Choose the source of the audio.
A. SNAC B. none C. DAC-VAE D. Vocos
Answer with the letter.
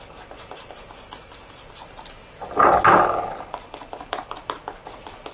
B